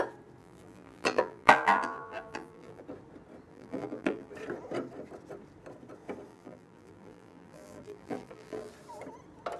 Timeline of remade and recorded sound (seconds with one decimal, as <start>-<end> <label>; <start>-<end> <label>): 0.0-0.4 recorded; 0.4-2.8 remade; 2.8-3.5 recorded; 3.5-4.3 remade; 4.3-6.3 recorded; 6.3-8.7 remade; 8.7-9.6 recorded